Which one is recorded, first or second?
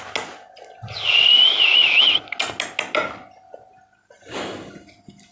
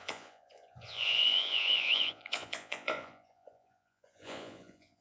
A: first